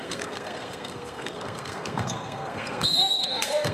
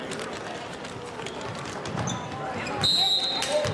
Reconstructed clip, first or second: first